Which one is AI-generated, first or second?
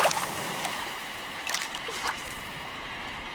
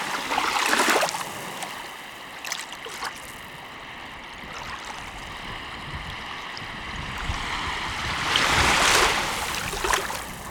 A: first